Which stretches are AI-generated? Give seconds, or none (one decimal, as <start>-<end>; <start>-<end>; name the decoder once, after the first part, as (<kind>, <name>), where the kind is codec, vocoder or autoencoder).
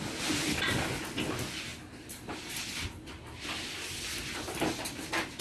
1.7-2.5 (vocoder, BigVGAN v2)